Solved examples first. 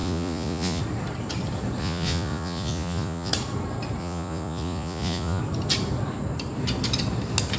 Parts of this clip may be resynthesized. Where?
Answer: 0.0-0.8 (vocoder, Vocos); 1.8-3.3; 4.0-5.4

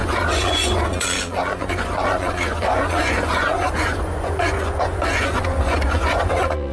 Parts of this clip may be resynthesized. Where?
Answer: 0.0-6.7 (vocoder, Vocos)

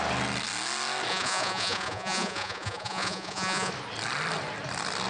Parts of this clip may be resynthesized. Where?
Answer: 1.1-3.7 (vocoder, Vocos)

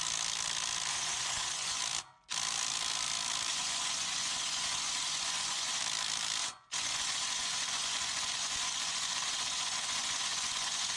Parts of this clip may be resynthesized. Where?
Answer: 0.9-1.8 (vocoder, Vocos); 3.5-5.8; 6.4-11.0

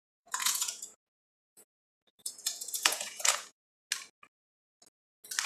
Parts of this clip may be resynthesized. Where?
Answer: 0.0-3.6 (vocoder, Vocos)